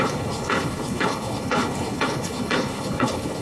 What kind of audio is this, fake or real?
fake